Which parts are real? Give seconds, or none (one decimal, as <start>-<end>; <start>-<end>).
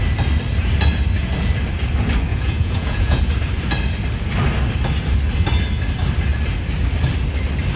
0.0-2.3; 3.2-7.8